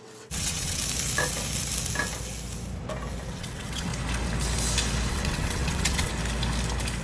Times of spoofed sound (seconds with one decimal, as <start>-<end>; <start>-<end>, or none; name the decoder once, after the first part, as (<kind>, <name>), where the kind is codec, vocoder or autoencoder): 0.0-0.8 (vocoder, WaveNeXt); 3.3-3.9; 5.1-6.1